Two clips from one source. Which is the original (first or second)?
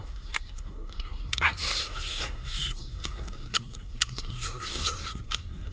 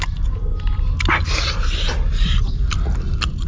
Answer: second